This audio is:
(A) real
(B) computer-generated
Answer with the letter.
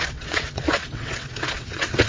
B